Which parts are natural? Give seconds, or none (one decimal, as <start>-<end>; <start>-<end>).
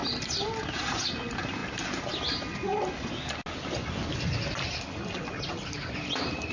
0.0-6.5